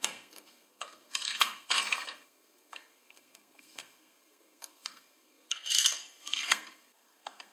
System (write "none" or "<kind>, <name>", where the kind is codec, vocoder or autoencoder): codec, SNAC